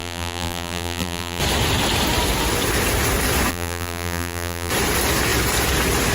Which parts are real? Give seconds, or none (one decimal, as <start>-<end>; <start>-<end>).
1.4-3.5; 4.7-6.1